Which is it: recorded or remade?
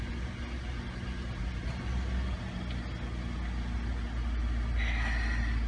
recorded